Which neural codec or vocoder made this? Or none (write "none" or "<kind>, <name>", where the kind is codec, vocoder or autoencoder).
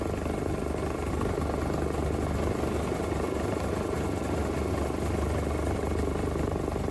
none